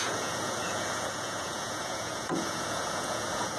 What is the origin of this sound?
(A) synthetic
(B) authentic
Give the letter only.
A